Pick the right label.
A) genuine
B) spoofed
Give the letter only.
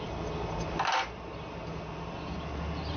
A